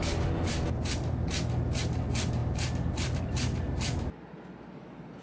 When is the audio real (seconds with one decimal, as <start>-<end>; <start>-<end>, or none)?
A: 0.0-5.2